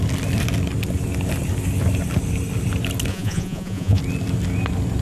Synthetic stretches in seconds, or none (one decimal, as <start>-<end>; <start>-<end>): 3.1-4.0